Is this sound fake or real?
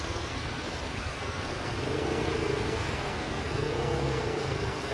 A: fake